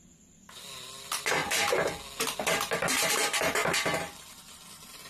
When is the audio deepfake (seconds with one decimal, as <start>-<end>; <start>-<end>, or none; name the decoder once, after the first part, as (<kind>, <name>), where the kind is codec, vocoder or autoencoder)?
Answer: 0.0-1.4 (vocoder, BigVGAN v2); 3.1-3.6; 4.3-5.1